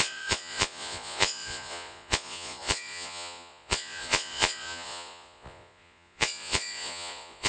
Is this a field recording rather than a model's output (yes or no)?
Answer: no